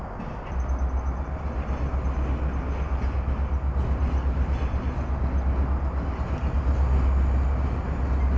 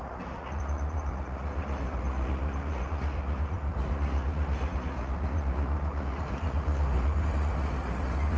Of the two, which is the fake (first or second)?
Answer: second